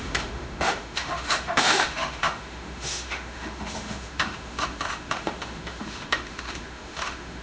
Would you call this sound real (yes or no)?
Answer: no